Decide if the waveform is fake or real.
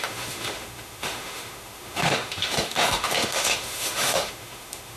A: fake